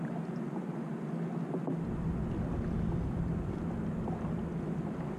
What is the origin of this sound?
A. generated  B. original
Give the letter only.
B